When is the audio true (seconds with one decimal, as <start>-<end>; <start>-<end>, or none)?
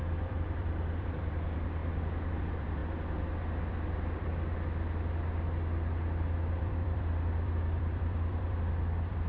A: 2.8-3.7; 4.3-6.6